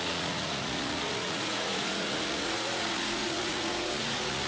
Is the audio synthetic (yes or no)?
yes